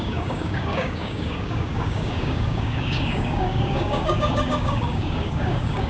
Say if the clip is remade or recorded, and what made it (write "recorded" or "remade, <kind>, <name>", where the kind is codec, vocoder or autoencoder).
remade, codec, DAC